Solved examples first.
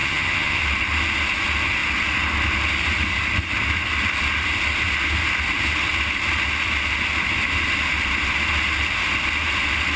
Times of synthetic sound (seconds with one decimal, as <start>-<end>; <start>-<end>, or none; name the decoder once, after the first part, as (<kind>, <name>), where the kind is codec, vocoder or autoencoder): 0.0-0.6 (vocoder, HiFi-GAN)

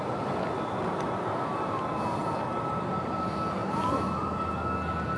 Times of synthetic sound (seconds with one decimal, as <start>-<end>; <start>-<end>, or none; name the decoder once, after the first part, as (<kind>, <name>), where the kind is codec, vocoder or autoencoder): 2.5-3.2 (vocoder, BigVGAN v2); 3.6-4.1

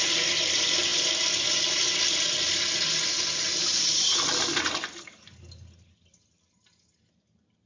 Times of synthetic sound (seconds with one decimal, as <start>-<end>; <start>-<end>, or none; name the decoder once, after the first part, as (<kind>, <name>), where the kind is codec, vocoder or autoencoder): none